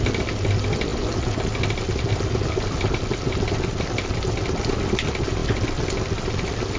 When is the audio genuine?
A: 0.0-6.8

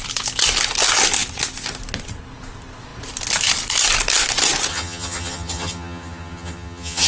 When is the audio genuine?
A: 0.0-4.7

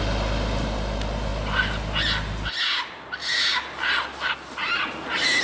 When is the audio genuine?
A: 0.0-5.4

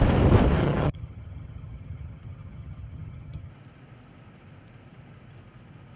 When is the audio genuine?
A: 0.0-0.6; 3.5-6.0

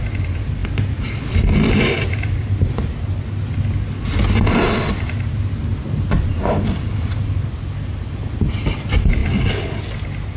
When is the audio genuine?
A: 0.0-10.4

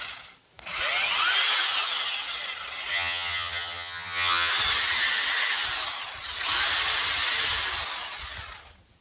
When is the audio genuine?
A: 0.0-2.9; 4.5-9.0

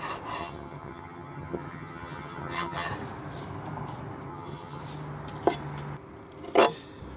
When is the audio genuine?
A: 0.0-0.4; 2.9-4.3; 4.8-7.2

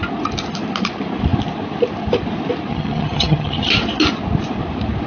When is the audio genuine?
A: 0.0-2.7; 3.7-5.1